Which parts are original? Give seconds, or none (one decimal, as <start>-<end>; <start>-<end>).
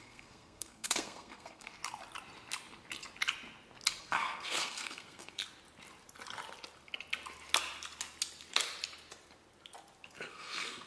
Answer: 1.8-4.0; 5.4-10.1